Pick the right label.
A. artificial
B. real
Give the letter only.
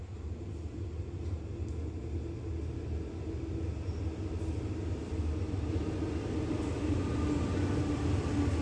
B